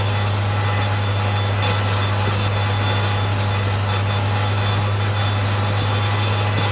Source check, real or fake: real